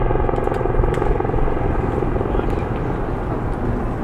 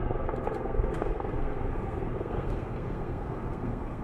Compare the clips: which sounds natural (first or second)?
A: first